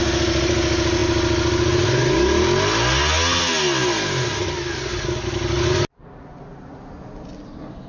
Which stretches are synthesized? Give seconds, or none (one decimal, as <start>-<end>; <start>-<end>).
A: none

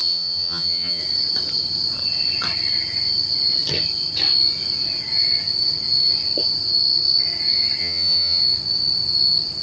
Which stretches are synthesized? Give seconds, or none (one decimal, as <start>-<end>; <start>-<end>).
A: 0.0-1.0; 7.8-8.4

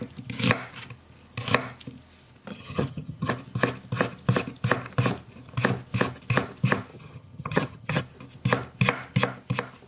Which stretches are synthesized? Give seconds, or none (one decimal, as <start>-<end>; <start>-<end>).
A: 2.5-3.3; 6.9-8.0

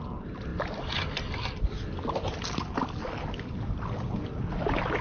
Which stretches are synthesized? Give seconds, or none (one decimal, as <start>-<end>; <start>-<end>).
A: none

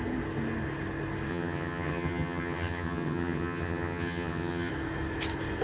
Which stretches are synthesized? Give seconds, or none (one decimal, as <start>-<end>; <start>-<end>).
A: 1.3-4.7

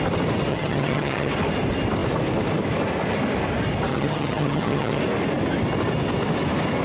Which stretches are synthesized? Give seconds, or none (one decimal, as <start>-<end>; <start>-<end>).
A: 0.5-1.3; 3.9-5.0